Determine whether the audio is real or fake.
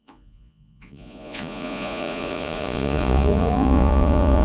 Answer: fake